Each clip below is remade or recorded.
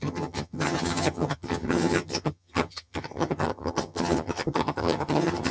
remade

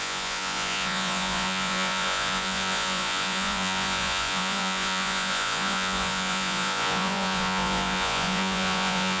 remade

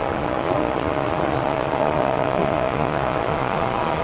remade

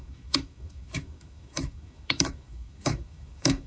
remade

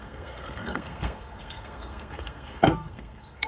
remade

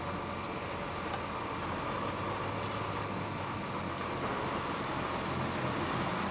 recorded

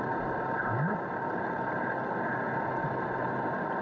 recorded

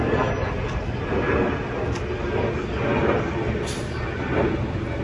recorded